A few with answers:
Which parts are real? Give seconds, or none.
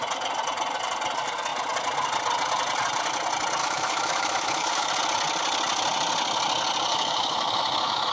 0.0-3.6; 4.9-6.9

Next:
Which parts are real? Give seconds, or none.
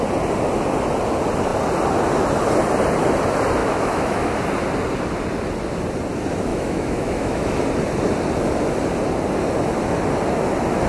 0.0-3.6; 4.4-6.5; 7.6-10.9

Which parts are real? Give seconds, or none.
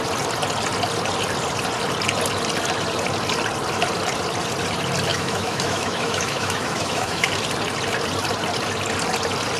0.0-5.1; 7.3-9.6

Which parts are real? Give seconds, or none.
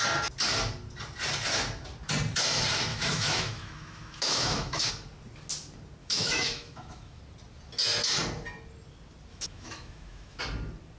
0.0-2.9; 4.9-6.0; 7.2-9.3; 10.4-11.0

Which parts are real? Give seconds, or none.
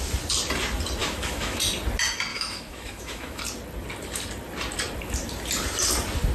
0.0-1.0; 1.6-2.3; 3.4-6.3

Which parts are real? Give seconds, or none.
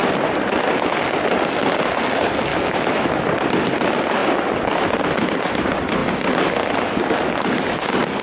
0.0-2.5; 3.1-8.2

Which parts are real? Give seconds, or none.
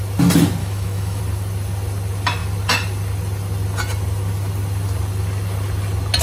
0.0-0.6; 1.2-6.2